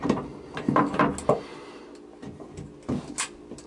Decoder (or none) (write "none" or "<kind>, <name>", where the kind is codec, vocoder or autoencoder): none